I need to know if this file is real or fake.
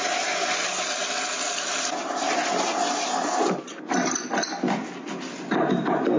real